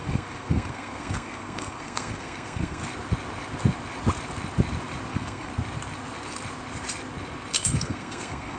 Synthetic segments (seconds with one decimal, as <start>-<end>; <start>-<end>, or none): 0.0-2.8; 5.1-5.5; 7.5-8.6